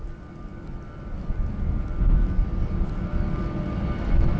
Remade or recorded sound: recorded